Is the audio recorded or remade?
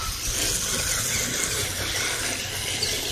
recorded